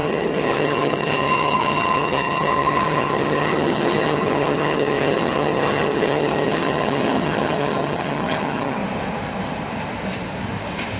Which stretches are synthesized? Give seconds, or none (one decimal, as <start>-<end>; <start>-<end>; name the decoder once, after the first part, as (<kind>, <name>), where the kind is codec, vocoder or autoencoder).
0.0-8.8 (vocoder, HiFi-GAN)